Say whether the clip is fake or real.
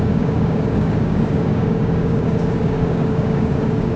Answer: fake